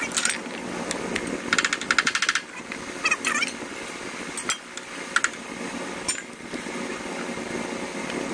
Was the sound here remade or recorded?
recorded